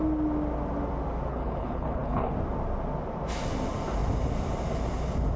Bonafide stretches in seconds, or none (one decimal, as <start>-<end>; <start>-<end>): 0.0-1.3; 2.3-5.4